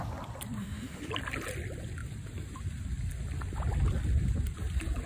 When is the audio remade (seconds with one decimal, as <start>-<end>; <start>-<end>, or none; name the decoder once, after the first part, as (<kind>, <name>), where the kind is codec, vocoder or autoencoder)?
0.6-1.1 (autoencoder, DAC-VAE)